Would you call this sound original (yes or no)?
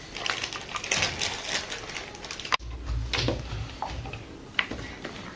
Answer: yes